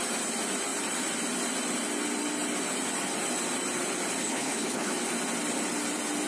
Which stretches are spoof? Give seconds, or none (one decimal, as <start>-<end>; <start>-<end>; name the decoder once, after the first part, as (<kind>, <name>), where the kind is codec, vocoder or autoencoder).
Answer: 4.2-4.9 (codec, HILCodec)